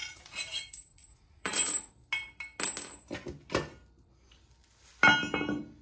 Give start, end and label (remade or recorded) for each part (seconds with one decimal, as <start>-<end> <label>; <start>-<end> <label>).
0.0-1.9 remade; 1.9-5.8 recorded